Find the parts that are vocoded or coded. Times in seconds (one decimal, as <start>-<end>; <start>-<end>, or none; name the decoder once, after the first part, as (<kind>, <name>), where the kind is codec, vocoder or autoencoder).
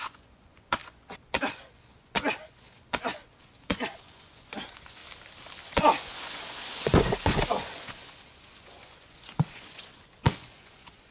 0.0-5.0 (vocoder, Vocos); 5.6-11.1